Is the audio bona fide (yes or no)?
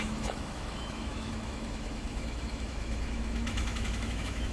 no